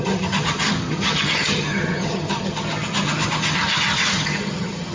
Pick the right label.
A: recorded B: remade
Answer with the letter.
B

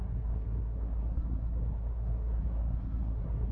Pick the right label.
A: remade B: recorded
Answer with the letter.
A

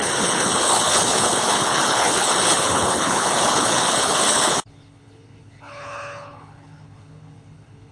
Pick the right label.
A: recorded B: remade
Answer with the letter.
B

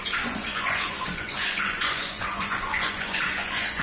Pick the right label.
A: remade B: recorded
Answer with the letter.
A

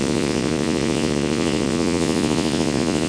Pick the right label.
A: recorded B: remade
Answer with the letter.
B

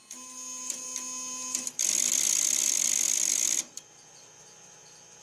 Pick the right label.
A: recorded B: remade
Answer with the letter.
A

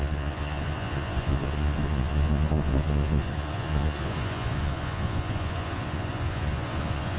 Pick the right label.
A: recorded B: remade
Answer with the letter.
B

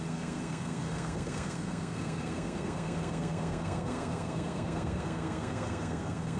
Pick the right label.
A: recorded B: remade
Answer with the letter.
B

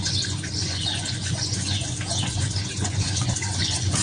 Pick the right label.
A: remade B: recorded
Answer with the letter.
A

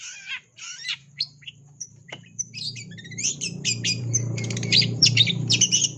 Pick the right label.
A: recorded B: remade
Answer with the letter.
B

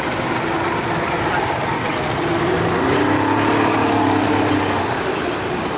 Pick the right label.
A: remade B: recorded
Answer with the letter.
B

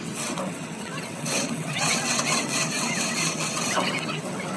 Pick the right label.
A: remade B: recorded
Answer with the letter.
A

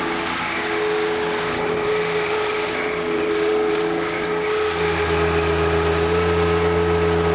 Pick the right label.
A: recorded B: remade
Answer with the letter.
A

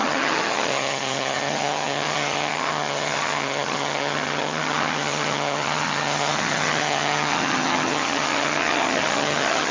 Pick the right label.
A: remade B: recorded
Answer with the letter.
A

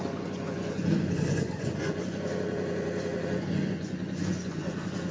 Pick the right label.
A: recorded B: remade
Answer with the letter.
B